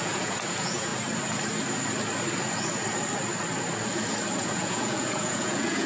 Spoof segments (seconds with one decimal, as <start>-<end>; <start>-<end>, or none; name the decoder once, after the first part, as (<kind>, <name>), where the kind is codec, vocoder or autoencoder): 0.0-0.9 (vocoder, Vocos); 4.4-5.9